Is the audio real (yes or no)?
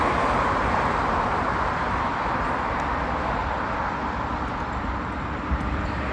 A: yes